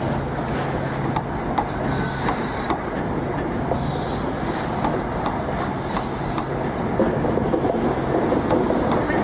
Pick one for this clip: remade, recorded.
recorded